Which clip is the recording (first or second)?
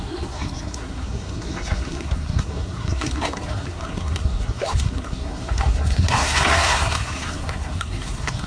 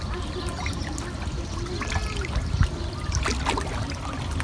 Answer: second